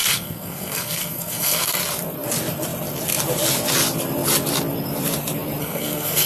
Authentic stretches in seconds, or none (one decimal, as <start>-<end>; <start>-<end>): 1.8-5.6